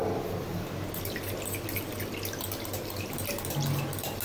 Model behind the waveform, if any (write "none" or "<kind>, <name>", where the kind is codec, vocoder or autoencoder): none